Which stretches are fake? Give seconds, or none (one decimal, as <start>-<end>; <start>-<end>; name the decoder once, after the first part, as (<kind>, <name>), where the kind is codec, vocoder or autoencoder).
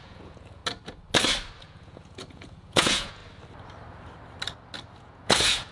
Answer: 0.0-0.6 (vocoder, Vocos); 1.6-3.2; 5.0-5.7